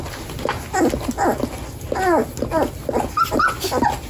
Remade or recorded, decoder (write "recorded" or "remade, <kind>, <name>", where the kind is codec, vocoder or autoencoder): recorded